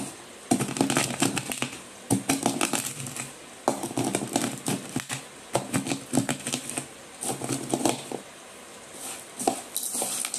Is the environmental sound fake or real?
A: real